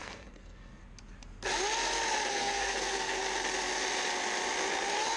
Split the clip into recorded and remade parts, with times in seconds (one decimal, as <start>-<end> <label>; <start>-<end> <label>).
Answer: 0.0-0.8 remade; 0.8-2.3 recorded; 2.3-3.2 remade; 3.2-5.2 recorded